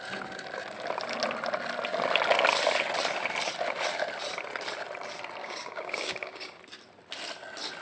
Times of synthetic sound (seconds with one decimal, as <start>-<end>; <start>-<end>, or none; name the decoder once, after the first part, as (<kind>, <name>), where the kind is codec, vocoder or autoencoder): 5.4-6.6 (codec, DAC)